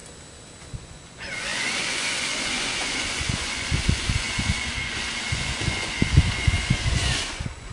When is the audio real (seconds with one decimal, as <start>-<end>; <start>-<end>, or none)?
0.0-0.6

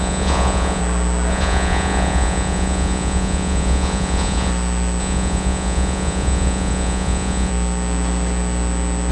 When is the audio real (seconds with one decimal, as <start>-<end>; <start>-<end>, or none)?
0.8-1.3; 4.5-5.0; 7.5-9.1

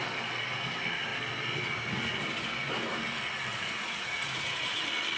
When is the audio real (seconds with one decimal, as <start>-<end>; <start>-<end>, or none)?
0.0-3.5; 4.8-5.2

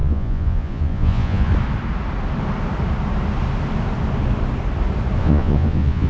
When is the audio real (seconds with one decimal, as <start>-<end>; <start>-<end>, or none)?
1.5-5.2

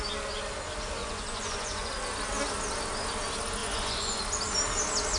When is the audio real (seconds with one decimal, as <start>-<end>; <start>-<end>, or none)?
0.0-1.0; 1.9-3.6; 4.2-5.2

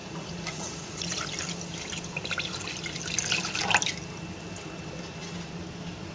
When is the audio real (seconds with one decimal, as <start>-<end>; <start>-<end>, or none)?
1.2-6.1

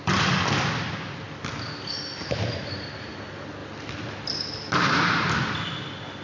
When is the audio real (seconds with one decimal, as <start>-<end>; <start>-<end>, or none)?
0.0-6.2